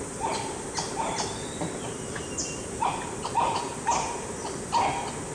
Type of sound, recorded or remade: recorded